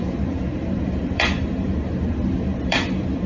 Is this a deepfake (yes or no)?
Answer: yes